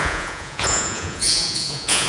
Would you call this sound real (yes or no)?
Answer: no